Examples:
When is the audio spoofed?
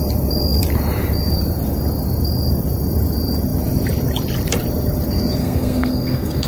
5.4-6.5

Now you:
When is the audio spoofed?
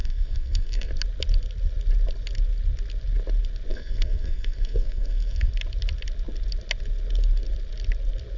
0.0-0.9; 3.7-5.5